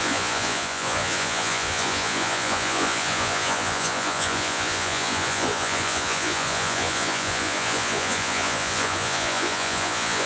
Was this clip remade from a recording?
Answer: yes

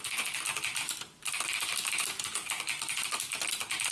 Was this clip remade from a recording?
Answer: no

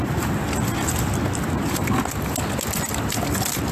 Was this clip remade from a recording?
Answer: no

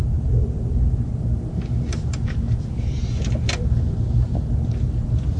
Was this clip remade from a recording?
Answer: no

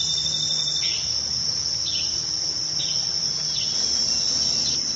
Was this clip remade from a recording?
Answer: no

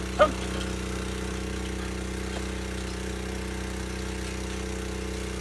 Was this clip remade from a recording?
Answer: no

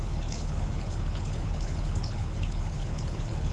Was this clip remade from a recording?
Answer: yes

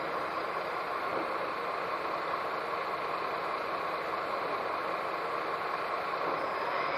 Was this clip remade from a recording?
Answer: no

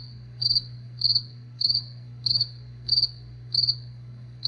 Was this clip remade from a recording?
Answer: yes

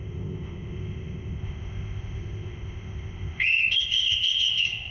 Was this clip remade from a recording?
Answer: yes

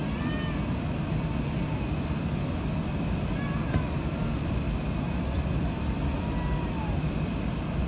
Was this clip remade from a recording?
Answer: no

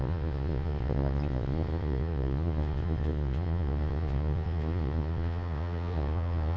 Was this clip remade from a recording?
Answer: yes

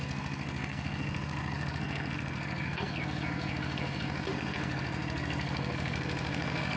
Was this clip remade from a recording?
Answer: yes